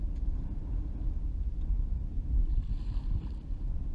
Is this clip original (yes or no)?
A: yes